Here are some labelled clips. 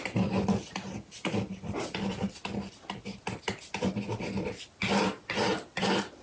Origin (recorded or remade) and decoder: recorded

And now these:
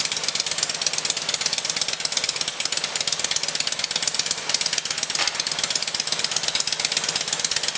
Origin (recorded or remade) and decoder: recorded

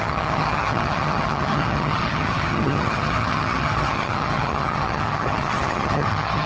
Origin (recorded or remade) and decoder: remade, vocoder, HiFi-GAN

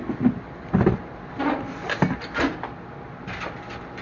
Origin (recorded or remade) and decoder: recorded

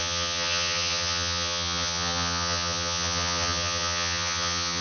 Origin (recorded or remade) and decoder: remade, vocoder, HiFi-GAN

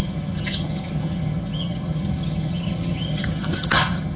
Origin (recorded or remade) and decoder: remade, vocoder, HiFi-GAN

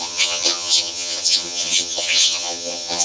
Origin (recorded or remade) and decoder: remade, vocoder, HiFi-GAN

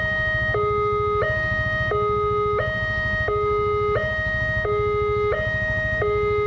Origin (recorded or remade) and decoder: recorded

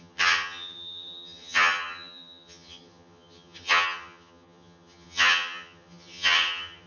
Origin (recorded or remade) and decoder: remade, vocoder, HiFi-GAN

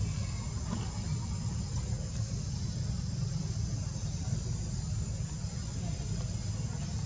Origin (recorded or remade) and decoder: recorded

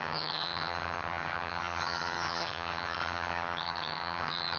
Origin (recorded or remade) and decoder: remade, vocoder, HiFi-GAN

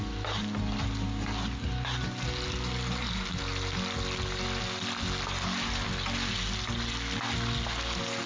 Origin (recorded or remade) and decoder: recorded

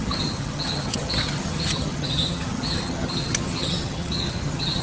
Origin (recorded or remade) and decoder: remade, vocoder, HiFi-GAN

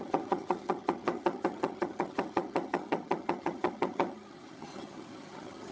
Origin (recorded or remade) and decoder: remade, vocoder, HiFi-GAN